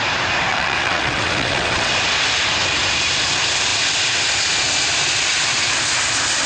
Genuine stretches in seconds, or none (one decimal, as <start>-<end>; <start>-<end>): 0.0-0.5; 1.9-6.5